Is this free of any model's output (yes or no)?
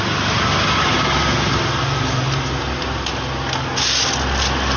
yes